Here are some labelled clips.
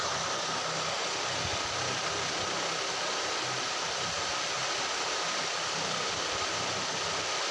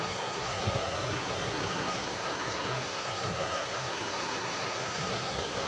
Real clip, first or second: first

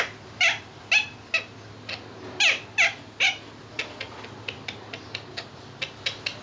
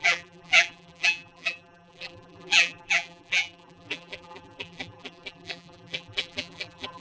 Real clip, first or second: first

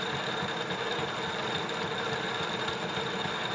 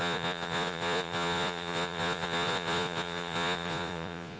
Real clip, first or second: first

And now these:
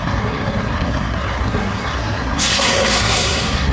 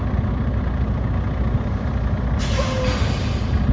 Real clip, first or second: second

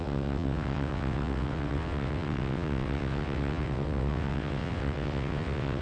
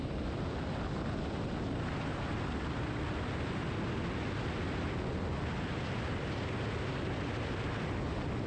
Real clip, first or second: second